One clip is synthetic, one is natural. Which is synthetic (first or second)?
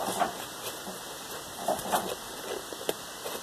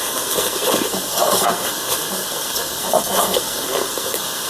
second